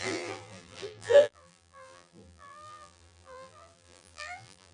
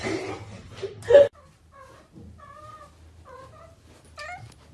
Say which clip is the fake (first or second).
first